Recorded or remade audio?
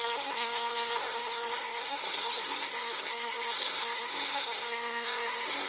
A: remade